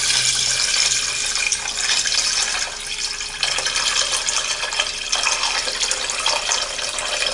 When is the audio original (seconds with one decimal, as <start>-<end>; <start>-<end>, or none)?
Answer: 0.0-7.3